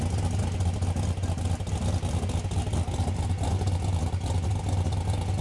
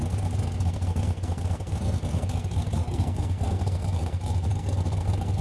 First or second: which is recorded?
first